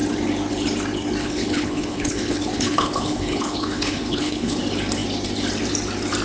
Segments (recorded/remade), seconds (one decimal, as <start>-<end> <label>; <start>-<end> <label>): 0.0-1.2 recorded; 1.2-4.6 remade; 4.6-6.2 recorded